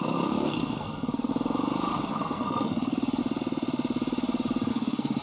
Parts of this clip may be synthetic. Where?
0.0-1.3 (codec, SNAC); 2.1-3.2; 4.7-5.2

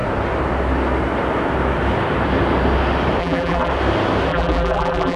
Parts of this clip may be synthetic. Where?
3.2-3.7 (vocoder, BigVGAN v2); 4.3-5.2

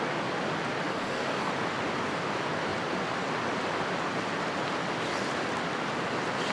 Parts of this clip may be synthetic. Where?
0.9-1.5 (codec, DAC)

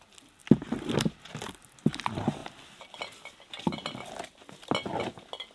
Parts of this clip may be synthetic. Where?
none

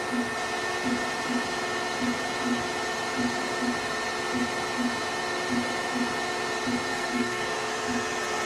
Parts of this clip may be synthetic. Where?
6.9-7.4 (codec, SNAC)